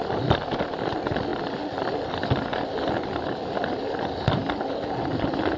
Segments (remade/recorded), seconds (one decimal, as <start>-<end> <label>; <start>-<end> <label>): 0.0-5.6 recorded